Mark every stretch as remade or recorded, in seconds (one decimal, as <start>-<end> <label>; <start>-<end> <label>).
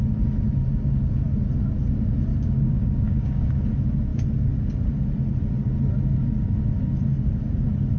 0.0-2.3 recorded; 2.3-3.5 remade; 3.5-8.0 recorded